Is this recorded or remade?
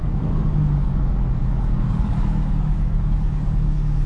remade